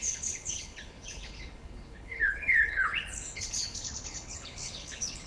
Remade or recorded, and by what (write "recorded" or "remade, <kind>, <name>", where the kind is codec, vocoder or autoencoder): remade, codec, HILCodec